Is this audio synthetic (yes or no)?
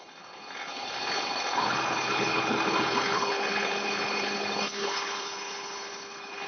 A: yes